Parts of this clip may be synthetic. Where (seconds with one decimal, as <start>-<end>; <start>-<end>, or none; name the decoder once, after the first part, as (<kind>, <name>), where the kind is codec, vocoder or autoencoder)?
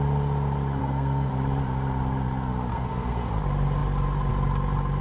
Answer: 0.8-1.3 (codec, SNAC); 2.7-3.3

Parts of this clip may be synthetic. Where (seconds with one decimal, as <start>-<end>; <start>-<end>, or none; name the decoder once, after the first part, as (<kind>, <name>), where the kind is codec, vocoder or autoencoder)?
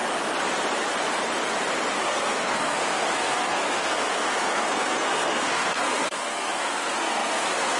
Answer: 2.0-7.8 (codec, SNAC)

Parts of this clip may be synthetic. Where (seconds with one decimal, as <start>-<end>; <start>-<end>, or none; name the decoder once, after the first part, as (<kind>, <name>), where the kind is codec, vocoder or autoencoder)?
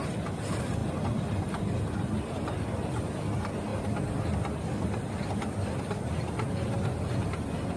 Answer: none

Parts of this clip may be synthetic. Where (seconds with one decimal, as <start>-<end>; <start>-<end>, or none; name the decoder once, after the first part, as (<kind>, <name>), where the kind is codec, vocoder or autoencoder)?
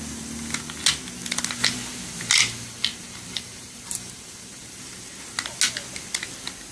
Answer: 2.9-5.2 (vocoder, BigVGAN v2)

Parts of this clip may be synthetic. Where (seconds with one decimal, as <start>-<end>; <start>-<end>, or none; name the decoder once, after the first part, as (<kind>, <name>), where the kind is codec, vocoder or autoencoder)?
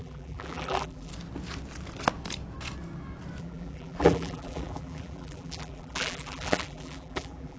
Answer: 0.0-1.1 (vocoder, BigVGAN v2); 3.4-7.6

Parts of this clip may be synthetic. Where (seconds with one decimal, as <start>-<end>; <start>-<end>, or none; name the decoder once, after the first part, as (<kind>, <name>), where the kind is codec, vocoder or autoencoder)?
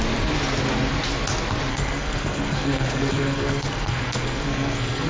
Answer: 1.7-5.1 (codec, SNAC)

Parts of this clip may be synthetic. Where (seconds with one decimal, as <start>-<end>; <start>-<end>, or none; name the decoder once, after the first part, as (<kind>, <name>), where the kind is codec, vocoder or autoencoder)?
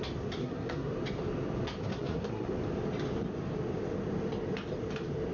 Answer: 0.4-0.9 (codec, SNAC); 1.9-2.5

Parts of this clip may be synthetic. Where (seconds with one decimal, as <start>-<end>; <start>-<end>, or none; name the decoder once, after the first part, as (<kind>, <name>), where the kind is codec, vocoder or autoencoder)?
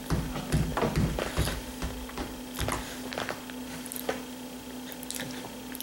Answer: none